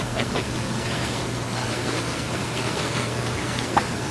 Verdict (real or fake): fake